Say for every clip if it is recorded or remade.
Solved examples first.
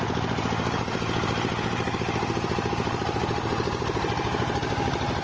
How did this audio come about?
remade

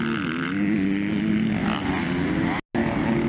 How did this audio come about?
recorded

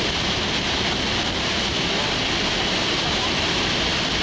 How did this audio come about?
remade